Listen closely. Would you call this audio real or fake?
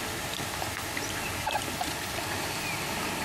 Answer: real